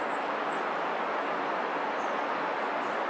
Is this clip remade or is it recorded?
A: recorded